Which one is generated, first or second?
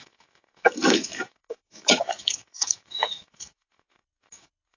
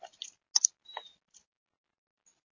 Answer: first